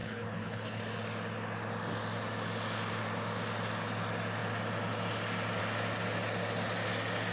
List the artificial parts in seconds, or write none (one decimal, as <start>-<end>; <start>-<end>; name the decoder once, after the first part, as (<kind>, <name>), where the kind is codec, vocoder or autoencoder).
0.0-0.8 (codec, HILCodec)